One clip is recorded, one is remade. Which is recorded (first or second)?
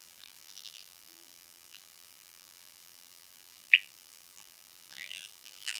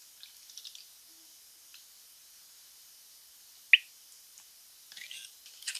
second